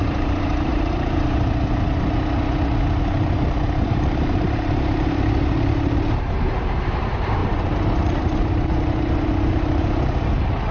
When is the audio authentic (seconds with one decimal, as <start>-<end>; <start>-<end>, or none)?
0.7-3.0